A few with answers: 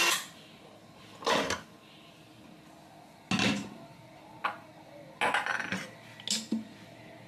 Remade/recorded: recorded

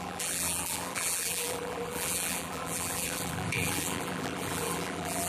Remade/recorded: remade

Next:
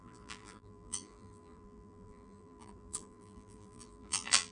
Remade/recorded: remade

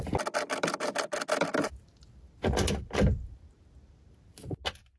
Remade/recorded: recorded